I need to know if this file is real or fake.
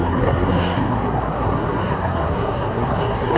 fake